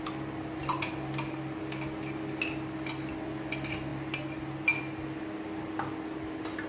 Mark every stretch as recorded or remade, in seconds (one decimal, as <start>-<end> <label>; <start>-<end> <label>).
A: 0.0-6.7 recorded